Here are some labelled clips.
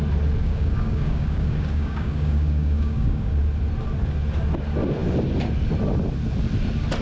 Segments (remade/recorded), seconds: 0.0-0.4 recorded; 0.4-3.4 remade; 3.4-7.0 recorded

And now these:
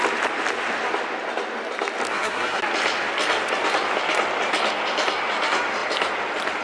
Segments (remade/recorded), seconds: 0.0-2.1 recorded; 2.1-2.6 remade; 2.6-6.6 recorded

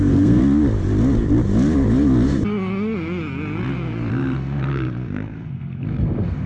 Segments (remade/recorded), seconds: 0.0-0.4 remade; 0.4-4.1 recorded; 4.1-6.5 remade

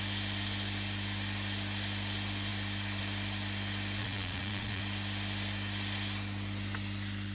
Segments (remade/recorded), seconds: 0.0-4.0 recorded; 4.0-4.8 remade; 4.8-7.3 recorded